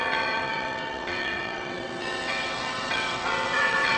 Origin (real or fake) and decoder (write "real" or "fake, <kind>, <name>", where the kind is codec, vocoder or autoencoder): fake, vocoder, WaveNeXt